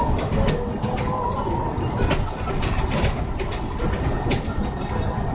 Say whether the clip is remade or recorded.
recorded